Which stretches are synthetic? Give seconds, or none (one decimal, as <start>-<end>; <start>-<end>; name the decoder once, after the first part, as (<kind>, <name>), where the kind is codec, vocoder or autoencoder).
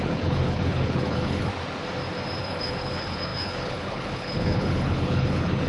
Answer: 0.0-1.5 (codec, HILCodec); 2.4-5.7